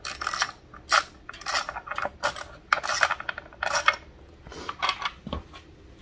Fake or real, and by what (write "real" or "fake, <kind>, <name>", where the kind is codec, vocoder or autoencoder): real